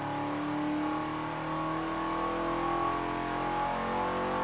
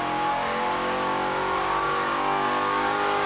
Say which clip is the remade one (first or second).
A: second